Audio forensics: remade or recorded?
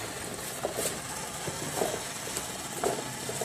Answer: recorded